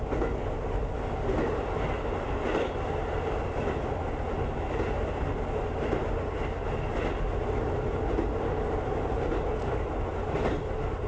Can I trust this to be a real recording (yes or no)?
yes